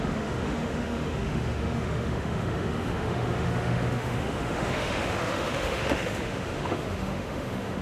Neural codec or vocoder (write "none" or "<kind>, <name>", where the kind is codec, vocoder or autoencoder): autoencoder, DAC-VAE